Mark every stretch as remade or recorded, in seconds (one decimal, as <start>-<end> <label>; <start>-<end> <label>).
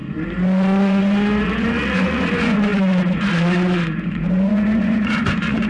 0.0-5.7 remade